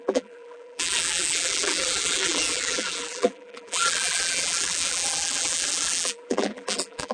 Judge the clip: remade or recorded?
remade